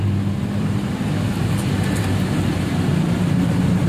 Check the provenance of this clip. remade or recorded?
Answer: remade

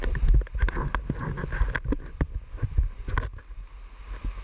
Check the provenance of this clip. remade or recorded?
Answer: recorded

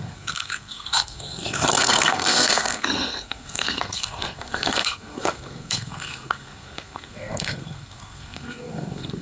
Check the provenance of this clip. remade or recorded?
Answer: remade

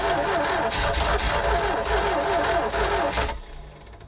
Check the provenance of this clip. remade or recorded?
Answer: recorded